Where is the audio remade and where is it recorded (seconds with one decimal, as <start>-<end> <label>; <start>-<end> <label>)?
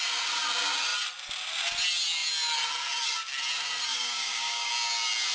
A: 0.0-3.9 recorded; 3.9-4.7 remade; 4.7-5.3 recorded